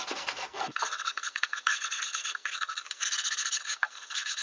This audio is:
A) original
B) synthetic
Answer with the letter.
B